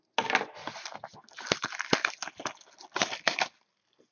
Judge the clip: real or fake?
real